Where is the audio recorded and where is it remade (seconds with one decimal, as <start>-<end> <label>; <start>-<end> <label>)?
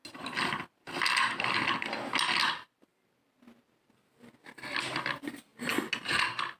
0.0-6.6 recorded